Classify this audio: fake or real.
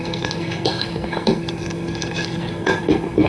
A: fake